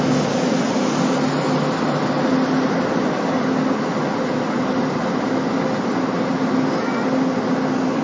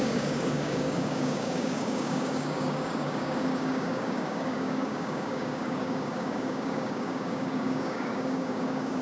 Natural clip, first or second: first